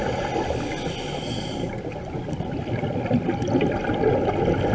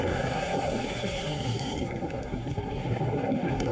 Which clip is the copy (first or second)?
second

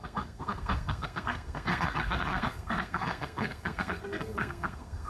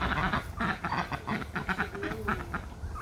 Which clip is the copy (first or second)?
first